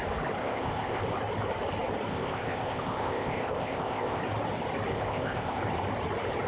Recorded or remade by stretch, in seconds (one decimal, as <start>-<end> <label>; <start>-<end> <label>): 0.0-0.4 recorded; 0.4-1.0 remade; 1.0-2.1 recorded; 2.1-4.2 remade; 4.2-4.9 recorded; 4.9-5.6 remade; 5.6-6.5 recorded